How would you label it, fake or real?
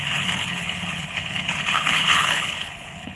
fake